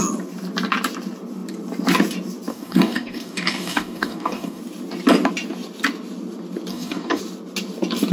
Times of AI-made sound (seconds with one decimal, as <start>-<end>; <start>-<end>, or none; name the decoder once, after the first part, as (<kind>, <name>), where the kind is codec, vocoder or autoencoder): 2.5-4.6 (codec, DAC); 6.7-7.2